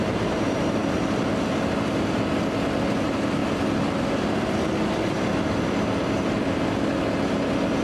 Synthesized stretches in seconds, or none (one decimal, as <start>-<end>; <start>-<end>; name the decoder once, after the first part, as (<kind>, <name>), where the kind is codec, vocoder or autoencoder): 0.0-0.8 (vocoder, BigVGAN v2); 2.9-3.4